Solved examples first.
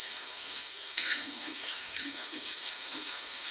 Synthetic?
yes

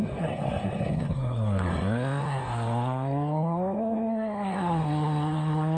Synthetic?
yes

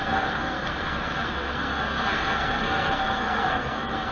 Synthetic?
yes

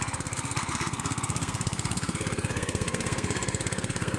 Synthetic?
yes